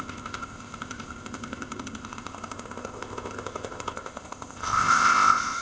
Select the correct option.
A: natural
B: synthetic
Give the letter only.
B